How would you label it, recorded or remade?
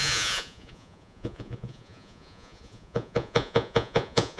remade